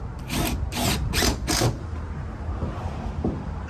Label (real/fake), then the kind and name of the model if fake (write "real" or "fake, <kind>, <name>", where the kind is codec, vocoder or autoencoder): real